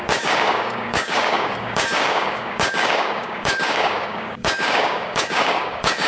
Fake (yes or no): yes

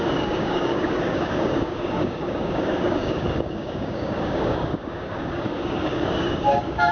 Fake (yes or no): yes